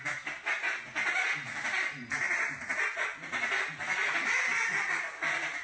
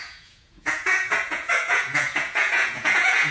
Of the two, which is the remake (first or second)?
second